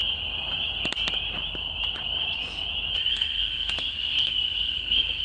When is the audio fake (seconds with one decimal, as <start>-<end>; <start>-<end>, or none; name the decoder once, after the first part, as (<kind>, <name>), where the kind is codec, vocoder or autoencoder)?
3.1-5.2 (codec, SNAC)